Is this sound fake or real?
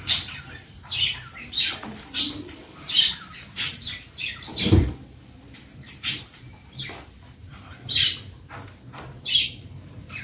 fake